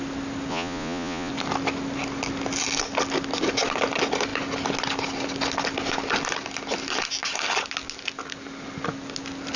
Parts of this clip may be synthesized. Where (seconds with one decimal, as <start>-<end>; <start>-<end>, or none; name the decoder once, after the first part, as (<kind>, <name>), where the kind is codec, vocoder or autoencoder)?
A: 0.5-1.3 (vocoder, Vocos)